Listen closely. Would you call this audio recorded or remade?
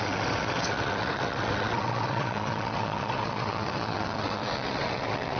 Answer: remade